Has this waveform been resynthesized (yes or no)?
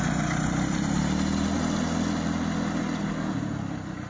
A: no